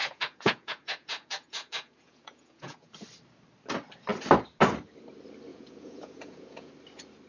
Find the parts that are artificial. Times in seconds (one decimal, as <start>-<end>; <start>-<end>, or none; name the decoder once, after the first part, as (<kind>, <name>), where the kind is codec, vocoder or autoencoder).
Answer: 0.0-2.9 (vocoder, Vocos); 5.5-6.7